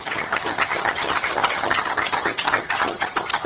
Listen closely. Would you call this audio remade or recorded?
remade